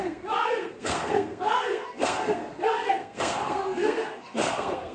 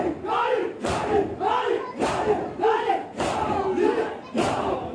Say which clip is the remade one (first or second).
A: first